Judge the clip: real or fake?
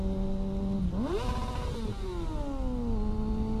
real